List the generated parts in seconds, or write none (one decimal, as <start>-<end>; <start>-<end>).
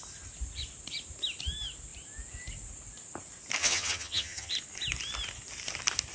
3.6-4.5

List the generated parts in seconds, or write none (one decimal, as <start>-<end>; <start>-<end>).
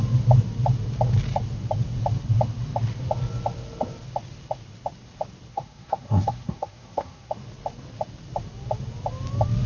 5.5-7.3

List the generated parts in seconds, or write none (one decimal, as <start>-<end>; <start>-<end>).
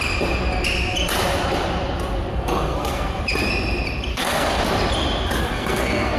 2.3-3.2; 4.1-4.6; 5.4-6.2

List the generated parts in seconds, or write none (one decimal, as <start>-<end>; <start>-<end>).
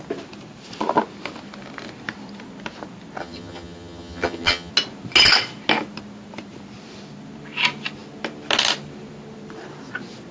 3.2-4.7